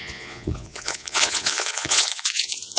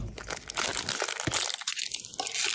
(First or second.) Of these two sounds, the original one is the second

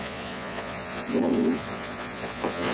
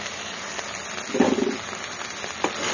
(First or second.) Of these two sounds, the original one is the second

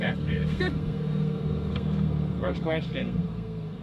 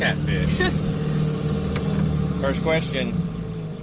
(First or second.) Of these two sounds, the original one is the second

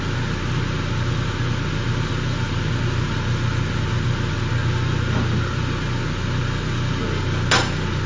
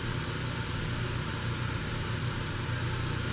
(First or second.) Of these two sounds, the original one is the first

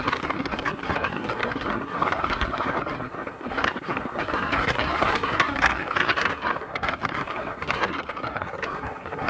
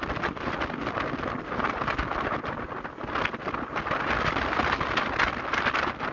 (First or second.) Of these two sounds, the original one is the second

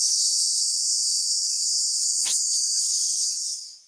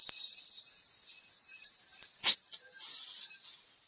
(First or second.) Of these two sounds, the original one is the second